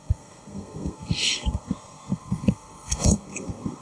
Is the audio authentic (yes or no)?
no